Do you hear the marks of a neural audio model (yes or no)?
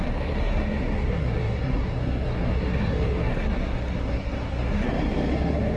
yes